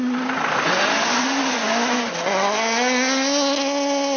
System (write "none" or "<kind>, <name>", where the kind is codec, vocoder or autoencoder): none